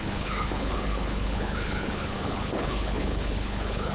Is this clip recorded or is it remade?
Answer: remade